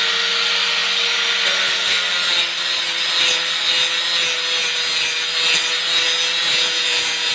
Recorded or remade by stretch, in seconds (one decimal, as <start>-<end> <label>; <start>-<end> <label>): 0.0-6.4 recorded; 6.4-7.3 remade